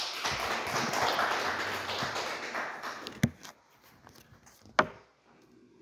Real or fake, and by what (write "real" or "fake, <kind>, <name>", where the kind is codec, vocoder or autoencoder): real